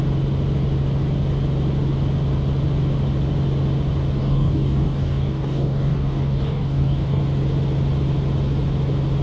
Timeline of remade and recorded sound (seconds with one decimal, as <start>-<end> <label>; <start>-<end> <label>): 0.0-4.2 recorded; 4.2-7.2 remade; 7.2-9.2 recorded

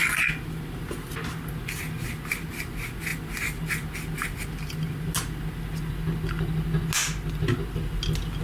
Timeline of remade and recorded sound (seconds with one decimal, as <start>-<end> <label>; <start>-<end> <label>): 0.0-8.4 recorded

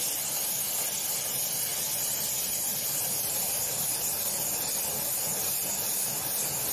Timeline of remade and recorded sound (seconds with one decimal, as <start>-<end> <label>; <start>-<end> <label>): 0.0-6.7 recorded

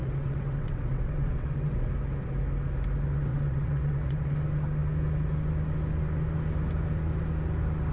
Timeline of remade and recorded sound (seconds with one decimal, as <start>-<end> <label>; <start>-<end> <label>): 0.0-1.9 remade; 1.9-3.3 recorded; 3.3-4.3 remade; 4.3-7.9 recorded

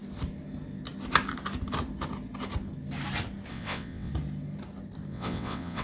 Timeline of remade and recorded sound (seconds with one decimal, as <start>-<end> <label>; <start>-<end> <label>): 0.0-3.5 recorded; 3.5-4.1 remade; 4.1-5.1 recorded; 5.1-5.8 remade

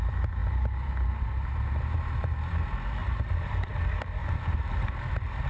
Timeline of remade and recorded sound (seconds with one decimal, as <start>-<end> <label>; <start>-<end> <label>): 0.0-3.0 recorded; 3.0-3.7 remade; 3.7-4.2 recorded; 4.2-5.1 remade; 5.1-5.5 recorded

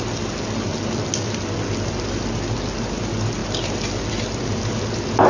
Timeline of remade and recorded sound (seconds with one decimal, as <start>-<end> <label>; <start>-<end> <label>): 0.0-5.3 recorded